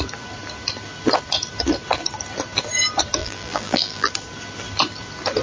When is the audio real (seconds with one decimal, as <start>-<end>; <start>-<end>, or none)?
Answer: 0.0-3.2; 4.1-5.4